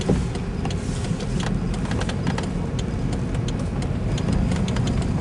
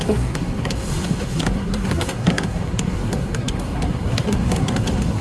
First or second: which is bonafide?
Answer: first